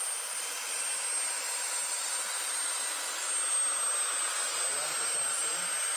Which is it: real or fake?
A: real